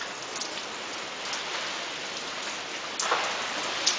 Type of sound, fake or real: real